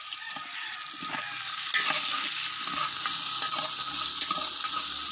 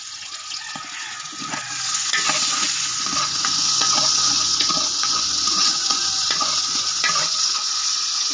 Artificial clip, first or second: second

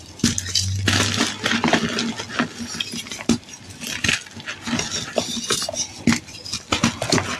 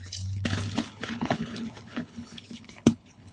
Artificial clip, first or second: second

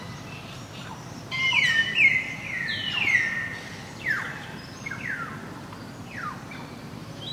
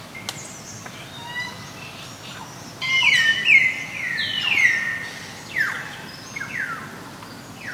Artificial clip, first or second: first